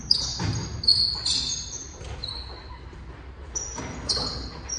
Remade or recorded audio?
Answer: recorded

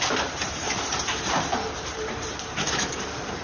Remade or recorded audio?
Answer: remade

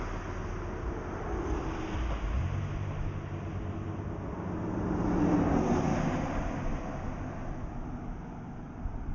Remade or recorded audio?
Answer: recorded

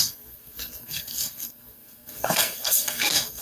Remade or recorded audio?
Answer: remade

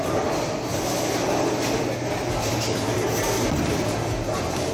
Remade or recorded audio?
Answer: recorded